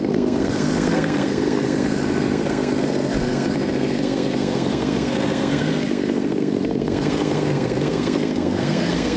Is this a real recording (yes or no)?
no